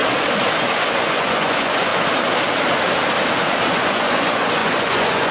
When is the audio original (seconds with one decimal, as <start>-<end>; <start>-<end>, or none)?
0.0-0.6; 1.9-3.7